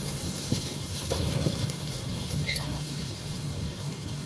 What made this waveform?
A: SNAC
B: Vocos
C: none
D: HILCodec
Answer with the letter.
A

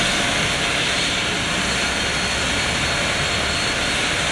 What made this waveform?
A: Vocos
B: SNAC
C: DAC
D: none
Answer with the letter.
D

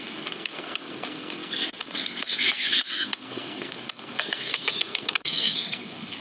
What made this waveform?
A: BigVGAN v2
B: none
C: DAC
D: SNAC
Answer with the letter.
D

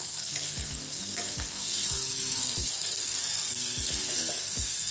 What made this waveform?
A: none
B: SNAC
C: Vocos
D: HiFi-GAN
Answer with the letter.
B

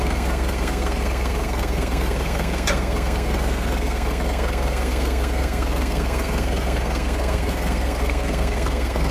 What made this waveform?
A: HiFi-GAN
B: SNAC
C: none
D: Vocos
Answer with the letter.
B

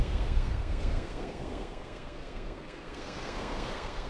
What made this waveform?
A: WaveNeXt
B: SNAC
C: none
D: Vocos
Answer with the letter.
B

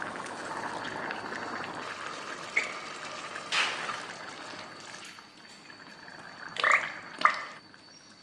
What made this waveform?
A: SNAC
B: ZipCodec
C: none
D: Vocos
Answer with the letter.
C